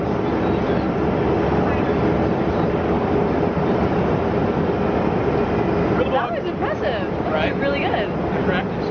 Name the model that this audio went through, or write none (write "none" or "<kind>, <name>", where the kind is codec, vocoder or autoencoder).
none